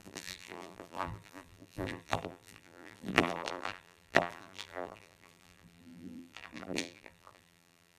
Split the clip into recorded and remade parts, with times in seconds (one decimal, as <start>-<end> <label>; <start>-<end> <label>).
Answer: 0.0-8.0 remade